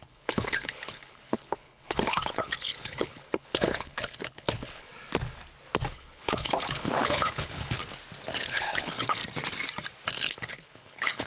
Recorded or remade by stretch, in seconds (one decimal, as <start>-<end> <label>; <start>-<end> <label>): 0.0-4.9 remade; 4.9-5.9 recorded; 5.9-7.8 remade; 7.8-8.4 recorded; 8.4-9.2 remade; 9.2-10.1 recorded; 10.1-11.3 remade